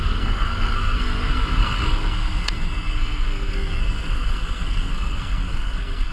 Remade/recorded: remade